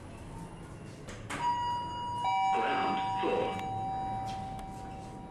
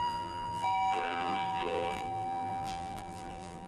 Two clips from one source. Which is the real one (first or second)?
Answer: first